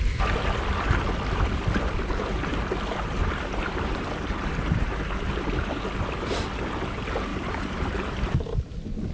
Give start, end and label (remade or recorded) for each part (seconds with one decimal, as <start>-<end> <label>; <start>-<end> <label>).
0.0-3.2 recorded; 3.2-5.8 remade; 5.8-7.3 recorded; 7.3-8.6 remade; 8.6-9.1 recorded